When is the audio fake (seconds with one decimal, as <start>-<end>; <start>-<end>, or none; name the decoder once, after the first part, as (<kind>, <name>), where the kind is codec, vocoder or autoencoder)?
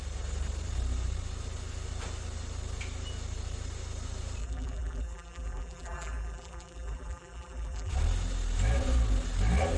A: 4.4-7.9 (vocoder, BigVGAN v2)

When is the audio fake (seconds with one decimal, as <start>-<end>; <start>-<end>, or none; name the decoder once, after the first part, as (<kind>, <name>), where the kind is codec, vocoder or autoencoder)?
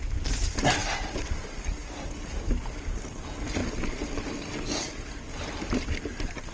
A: none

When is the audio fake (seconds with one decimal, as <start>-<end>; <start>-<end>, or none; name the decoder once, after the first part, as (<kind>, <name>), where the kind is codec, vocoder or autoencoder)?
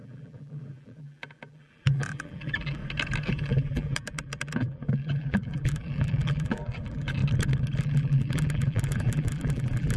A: 0.0-2.8 (vocoder, BigVGAN v2); 3.3-7.2; 7.8-10.0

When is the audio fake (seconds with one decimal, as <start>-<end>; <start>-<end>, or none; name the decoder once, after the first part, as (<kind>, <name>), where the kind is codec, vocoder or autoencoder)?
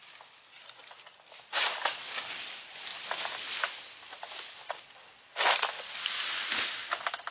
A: none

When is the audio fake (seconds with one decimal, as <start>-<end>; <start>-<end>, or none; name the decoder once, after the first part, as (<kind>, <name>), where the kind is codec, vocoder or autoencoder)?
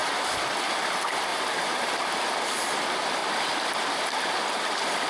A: 1.3-2.2 (vocoder, BigVGAN v2); 3.2-3.9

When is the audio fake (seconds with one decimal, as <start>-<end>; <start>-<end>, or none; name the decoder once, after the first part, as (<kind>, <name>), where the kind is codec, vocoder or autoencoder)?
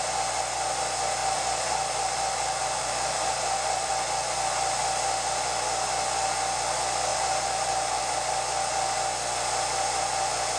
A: 1.2-3.9 (vocoder, BigVGAN v2); 7.1-8.0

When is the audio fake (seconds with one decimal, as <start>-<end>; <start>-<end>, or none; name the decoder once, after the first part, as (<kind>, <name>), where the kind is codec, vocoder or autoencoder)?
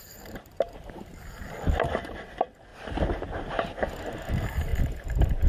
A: 0.0-1.1 (vocoder, BigVGAN v2); 2.1-2.7; 4.0-5.5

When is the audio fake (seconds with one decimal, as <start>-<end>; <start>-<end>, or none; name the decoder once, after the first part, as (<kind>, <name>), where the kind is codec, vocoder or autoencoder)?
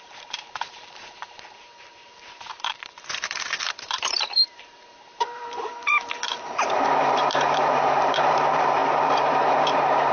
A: 0.0-10.1 (vocoder, BigVGAN v2)